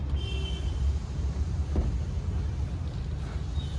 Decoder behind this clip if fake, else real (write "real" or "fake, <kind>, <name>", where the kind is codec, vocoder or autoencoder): real